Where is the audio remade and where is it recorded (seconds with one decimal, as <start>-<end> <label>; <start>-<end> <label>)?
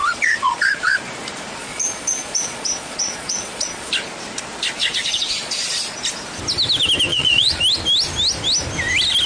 0.0-1.0 remade; 1.0-1.6 recorded; 1.6-3.9 remade; 3.9-4.8 recorded; 4.8-5.5 remade; 5.5-7.1 recorded; 7.1-7.6 remade; 7.6-9.3 recorded